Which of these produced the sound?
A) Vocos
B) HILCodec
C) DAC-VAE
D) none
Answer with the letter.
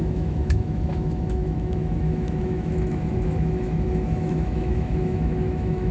C